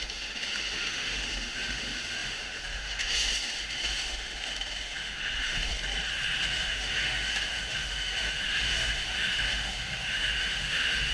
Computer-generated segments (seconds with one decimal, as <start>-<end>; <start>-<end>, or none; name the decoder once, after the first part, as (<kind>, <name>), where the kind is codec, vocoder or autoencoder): 0.0-5.7 (autoencoder, DAC-VAE); 6.4-11.1

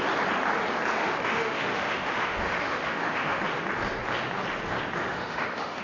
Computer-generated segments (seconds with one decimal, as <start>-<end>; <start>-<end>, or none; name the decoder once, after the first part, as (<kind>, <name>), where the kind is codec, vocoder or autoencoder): 1.0-3.4 (autoencoder, DAC-VAE); 5.0-5.8

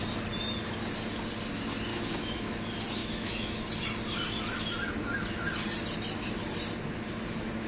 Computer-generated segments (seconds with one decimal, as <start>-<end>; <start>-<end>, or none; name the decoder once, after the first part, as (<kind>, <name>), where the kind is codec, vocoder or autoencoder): 1.9-2.6 (autoencoder, DAC-VAE); 3.0-3.7